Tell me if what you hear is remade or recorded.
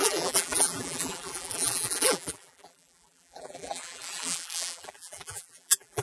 remade